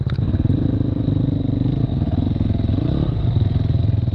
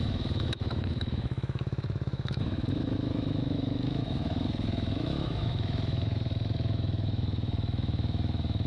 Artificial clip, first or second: second